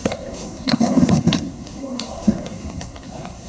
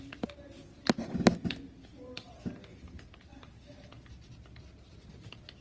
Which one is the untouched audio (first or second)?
second